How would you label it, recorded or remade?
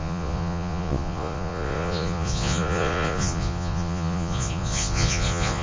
remade